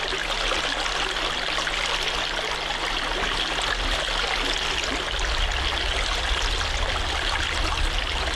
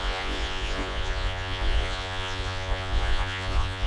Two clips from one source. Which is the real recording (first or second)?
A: first